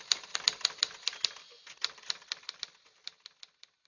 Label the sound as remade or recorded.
remade